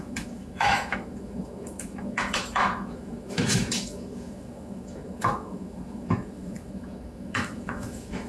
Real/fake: fake